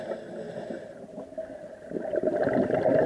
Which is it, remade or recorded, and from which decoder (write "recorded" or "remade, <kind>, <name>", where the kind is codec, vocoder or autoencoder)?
recorded